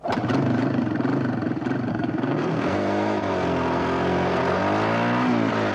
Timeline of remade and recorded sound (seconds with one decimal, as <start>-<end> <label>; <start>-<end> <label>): 0.0-1.9 recorded; 1.9-4.6 remade; 4.6-5.7 recorded